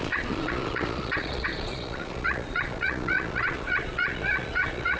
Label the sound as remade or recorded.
remade